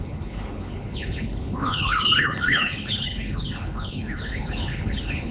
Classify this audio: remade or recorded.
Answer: remade